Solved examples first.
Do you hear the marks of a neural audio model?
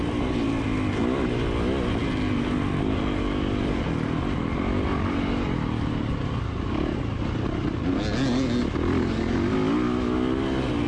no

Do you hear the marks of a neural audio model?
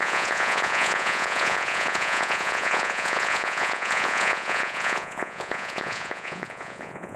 yes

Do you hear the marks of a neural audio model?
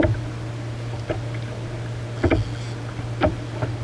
no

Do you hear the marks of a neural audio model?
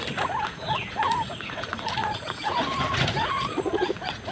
yes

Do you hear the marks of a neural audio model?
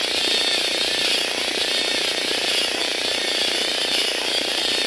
yes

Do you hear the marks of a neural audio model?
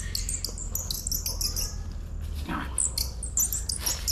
no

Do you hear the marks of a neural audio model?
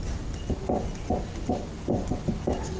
no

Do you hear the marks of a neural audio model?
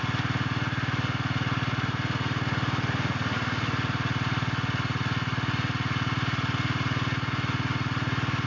no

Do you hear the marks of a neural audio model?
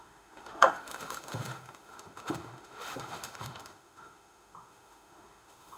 yes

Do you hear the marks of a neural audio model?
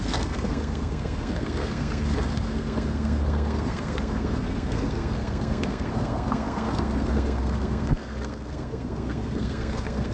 yes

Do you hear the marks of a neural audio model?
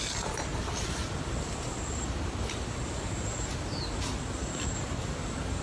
no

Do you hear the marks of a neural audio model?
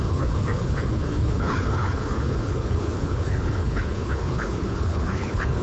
yes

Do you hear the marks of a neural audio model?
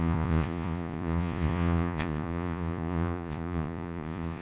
yes